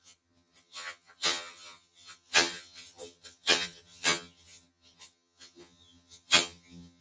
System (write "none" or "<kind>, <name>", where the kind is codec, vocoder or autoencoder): vocoder, HiFi-GAN